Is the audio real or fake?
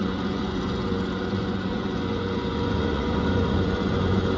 fake